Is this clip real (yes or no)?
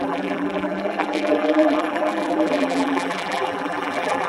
no